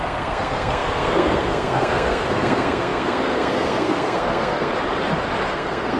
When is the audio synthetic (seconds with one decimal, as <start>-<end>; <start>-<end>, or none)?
0.0-4.7; 5.5-6.0